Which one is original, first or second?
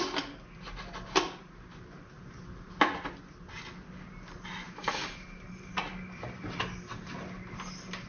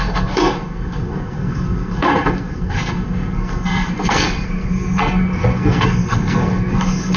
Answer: first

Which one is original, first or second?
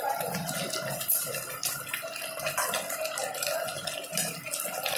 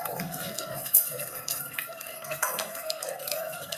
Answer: first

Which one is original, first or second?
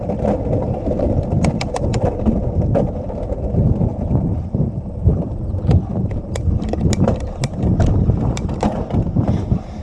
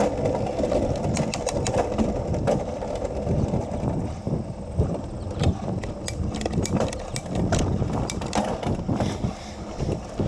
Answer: second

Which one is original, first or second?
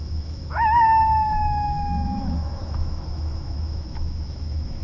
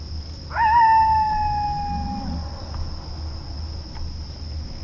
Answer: second